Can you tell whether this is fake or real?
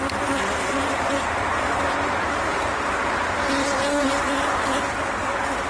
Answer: real